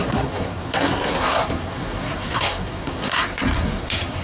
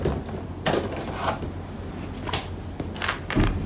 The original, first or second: second